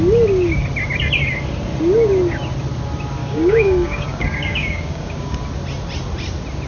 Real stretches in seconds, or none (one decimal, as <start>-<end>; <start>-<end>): 0.0-3.2; 5.4-6.7